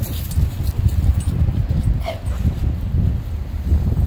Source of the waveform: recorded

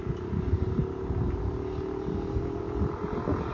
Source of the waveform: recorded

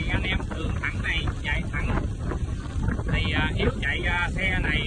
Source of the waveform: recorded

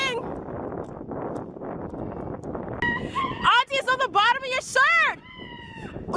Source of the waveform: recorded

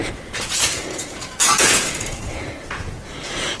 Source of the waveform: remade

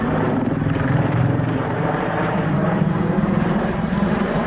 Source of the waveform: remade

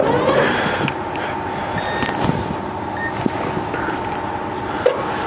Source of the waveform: recorded